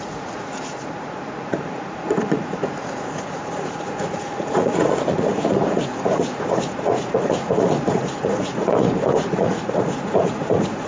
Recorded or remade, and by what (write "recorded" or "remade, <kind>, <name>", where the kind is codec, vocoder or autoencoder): remade, vocoder, Vocos